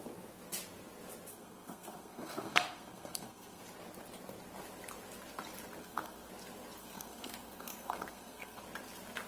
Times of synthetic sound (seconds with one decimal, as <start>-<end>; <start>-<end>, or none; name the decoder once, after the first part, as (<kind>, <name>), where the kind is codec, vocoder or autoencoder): 1.3-3.6 (codec, SNAC); 5.8-6.3; 6.8-8.6